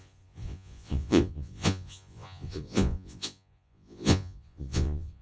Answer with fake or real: fake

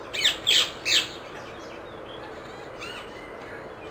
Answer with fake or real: real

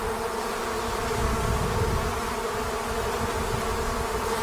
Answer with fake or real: real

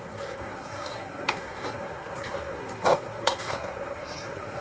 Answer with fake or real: fake